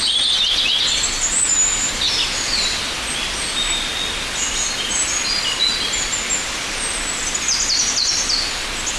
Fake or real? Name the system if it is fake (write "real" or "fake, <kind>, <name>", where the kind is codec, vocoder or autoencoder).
real